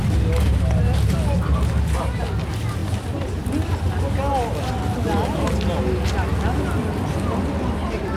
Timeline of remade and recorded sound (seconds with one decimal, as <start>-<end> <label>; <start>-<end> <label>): 0.0-8.2 recorded